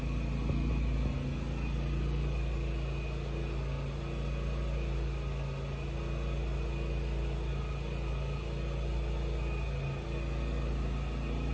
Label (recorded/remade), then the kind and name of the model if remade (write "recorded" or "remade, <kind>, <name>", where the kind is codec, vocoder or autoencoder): recorded